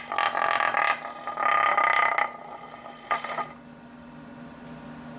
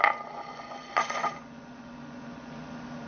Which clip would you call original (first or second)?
first